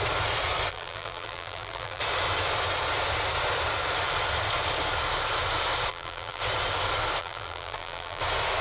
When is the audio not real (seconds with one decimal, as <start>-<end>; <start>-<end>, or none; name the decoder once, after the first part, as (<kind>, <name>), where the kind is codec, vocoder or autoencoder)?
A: 0.7-2.0 (vocoder, BigVGAN v2); 5.9-6.4; 7.2-8.2